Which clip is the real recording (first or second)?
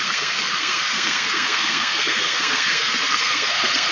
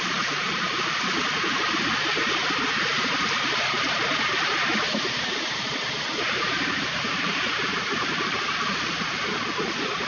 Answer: second